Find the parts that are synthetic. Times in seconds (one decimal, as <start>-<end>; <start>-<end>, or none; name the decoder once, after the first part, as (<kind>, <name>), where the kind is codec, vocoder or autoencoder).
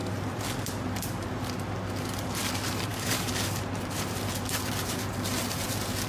2.9-3.6 (codec, DAC)